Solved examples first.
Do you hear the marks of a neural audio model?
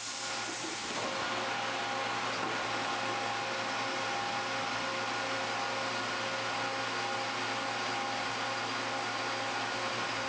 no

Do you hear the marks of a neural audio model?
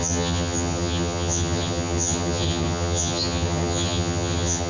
yes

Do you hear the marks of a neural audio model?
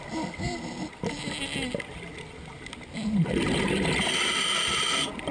no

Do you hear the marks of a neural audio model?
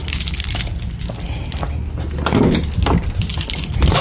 no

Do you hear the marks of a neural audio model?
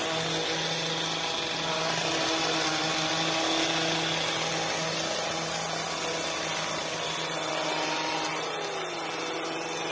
no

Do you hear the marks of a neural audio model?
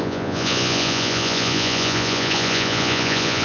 yes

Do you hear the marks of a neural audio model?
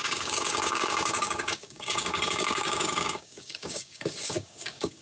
yes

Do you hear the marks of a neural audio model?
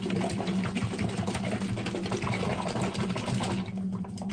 no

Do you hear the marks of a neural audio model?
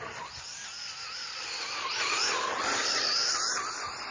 no